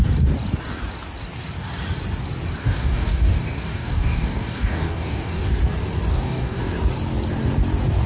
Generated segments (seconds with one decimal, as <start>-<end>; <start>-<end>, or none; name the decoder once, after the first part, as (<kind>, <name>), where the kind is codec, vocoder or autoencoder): 2.6-5.5 (codec, DAC); 6.1-6.6